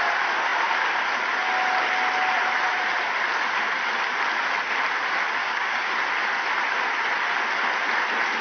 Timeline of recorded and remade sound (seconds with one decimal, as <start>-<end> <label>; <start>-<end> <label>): 0.0-5.4 recorded; 5.4-5.9 remade; 5.9-8.4 recorded

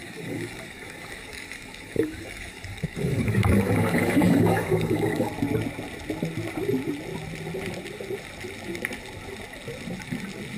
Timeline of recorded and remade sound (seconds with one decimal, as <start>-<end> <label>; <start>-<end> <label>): 0.0-5.3 remade; 5.3-10.6 recorded

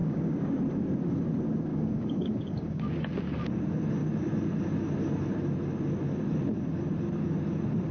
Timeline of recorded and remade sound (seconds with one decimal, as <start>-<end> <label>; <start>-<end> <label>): 0.0-0.6 remade; 0.6-1.7 recorded; 1.7-3.4 remade; 3.4-7.9 recorded